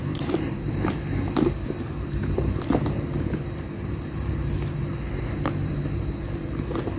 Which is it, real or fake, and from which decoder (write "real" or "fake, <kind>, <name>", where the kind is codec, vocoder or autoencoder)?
fake, vocoder, BigVGAN v2